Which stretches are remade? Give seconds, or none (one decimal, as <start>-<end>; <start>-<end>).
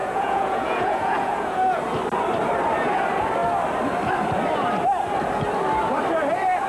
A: 0.0-1.8